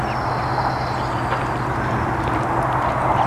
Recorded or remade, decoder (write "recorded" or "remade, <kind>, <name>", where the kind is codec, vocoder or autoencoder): recorded